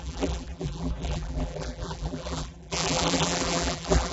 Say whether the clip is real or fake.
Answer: fake